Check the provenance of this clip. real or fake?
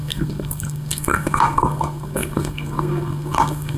fake